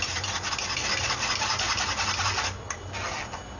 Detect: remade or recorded recorded